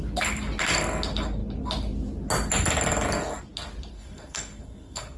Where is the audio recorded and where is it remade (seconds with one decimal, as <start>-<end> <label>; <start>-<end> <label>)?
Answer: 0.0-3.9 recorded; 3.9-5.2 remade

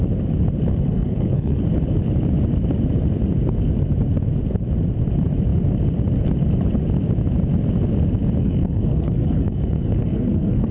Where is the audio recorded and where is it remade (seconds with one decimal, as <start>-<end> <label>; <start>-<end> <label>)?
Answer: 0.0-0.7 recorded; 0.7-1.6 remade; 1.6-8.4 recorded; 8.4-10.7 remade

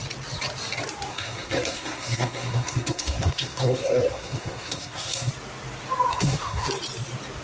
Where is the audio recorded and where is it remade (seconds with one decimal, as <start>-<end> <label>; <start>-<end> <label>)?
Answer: 0.0-1.1 recorded; 1.1-5.3 remade; 5.3-6.1 recorded; 6.1-6.7 remade; 6.7-7.4 recorded

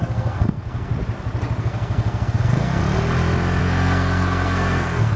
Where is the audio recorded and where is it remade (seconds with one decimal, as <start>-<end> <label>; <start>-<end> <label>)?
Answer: 0.0-0.9 remade; 0.9-1.6 recorded; 1.6-2.8 remade; 2.8-3.6 recorded; 3.6-5.2 remade

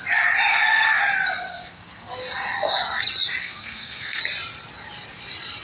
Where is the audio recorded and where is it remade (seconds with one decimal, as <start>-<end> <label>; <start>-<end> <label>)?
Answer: 0.0-0.5 recorded; 0.5-1.0 remade; 1.0-1.5 recorded; 1.5-2.1 remade; 2.1-3.4 recorded; 3.4-4.2 remade; 4.2-5.6 recorded

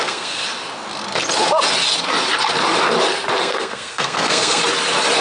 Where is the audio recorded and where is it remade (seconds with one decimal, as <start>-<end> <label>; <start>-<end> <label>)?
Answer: 0.0-0.4 remade; 0.4-3.4 recorded; 3.4-4.6 remade; 4.6-5.2 recorded

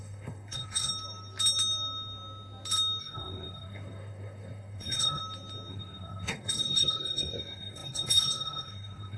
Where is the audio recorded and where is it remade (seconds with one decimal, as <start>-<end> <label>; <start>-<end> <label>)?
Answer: 0.0-0.9 remade; 0.9-3.0 recorded; 3.0-5.2 remade; 5.2-5.7 recorded; 5.7-9.2 remade